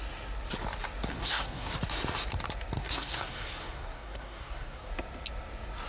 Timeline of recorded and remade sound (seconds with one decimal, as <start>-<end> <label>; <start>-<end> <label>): 0.0-1.1 recorded; 1.1-1.7 remade; 1.7-2.8 recorded; 2.8-4.9 remade; 4.9-5.9 recorded